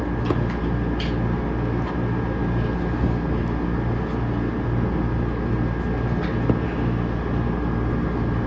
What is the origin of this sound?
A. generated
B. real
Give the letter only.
B